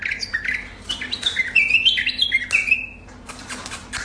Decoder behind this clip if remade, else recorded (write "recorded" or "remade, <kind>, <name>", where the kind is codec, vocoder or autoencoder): recorded